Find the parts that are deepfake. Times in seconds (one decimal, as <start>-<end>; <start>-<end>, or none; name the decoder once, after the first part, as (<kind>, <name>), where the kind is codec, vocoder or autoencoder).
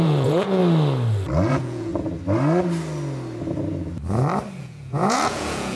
0.0-0.6 (vocoder, Vocos); 1.5-1.9; 4.6-5.8